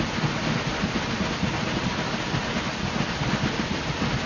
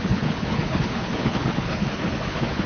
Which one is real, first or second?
first